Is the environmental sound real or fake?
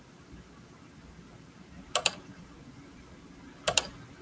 real